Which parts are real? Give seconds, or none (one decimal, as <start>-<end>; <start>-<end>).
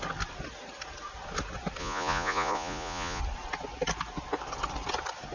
0.0-1.8; 3.2-5.3